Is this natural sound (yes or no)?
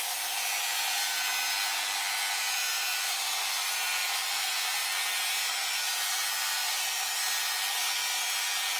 yes